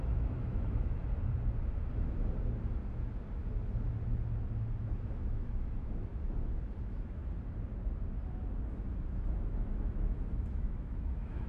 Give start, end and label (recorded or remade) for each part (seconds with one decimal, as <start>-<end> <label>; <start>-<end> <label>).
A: 0.0-1.0 remade; 1.0-4.8 recorded; 4.8-6.1 remade; 6.1-6.8 recorded; 6.8-7.2 remade; 7.2-8.7 recorded; 8.7-11.5 remade